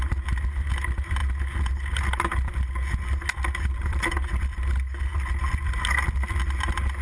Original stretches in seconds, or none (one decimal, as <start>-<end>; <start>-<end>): 0.0-7.0